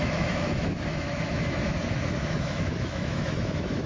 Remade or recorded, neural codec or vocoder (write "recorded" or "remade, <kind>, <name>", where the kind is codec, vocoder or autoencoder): remade, autoencoder, DAC-VAE